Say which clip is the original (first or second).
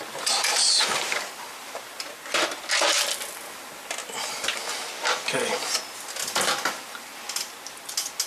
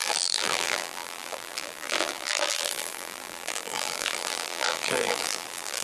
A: first